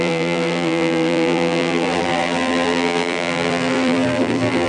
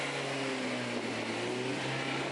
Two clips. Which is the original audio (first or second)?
second